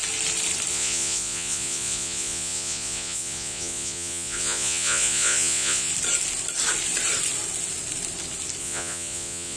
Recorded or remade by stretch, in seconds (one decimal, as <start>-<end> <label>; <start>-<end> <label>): 0.0-0.7 recorded; 0.7-5.9 remade; 5.9-8.6 recorded; 8.6-9.6 remade